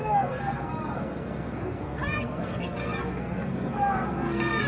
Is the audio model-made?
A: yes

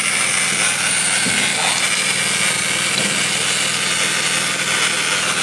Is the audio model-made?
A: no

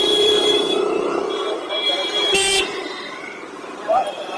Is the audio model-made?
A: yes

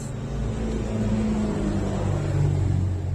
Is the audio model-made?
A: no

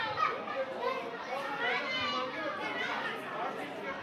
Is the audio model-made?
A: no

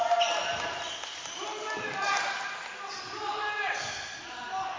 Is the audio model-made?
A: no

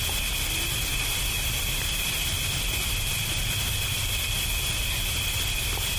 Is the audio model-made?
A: no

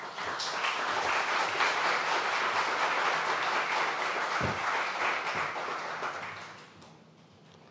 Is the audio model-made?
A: no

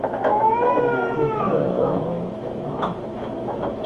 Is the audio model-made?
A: yes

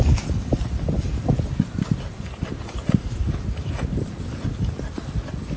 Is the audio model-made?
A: no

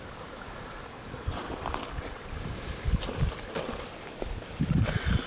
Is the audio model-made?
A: no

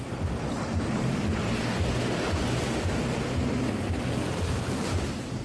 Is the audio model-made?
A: no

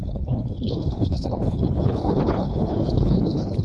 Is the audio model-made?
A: yes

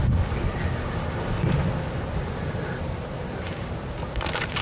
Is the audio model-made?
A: no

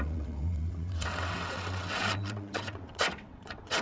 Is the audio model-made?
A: yes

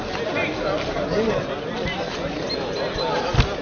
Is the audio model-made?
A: no